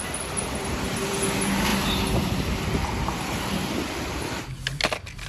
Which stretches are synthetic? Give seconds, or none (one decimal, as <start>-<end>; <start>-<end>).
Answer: none